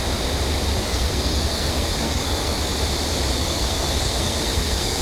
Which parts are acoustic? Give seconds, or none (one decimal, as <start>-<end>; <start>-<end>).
0.0-0.7; 2.6-3.4